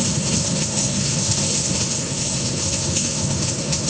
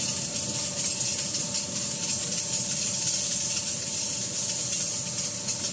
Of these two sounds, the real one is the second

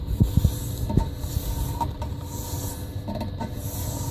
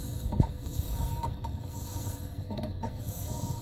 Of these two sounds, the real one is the first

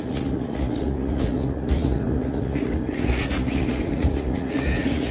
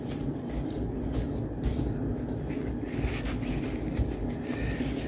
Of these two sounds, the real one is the second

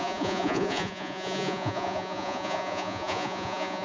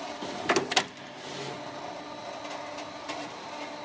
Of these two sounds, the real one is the second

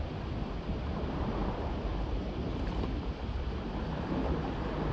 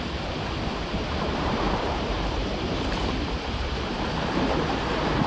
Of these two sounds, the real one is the first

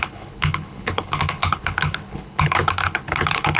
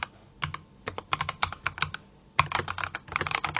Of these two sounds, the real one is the second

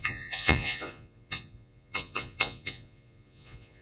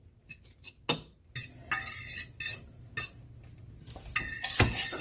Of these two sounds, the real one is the second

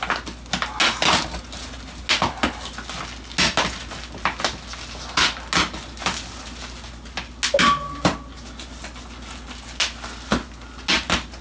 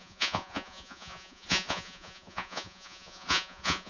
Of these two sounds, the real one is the first